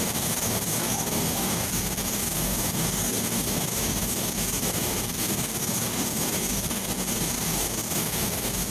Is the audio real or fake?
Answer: fake